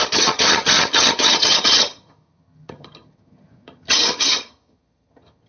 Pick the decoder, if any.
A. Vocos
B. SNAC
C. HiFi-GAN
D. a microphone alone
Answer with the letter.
C